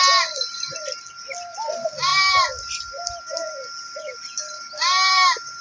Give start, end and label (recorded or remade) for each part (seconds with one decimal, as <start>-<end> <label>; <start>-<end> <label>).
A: 0.0-5.6 recorded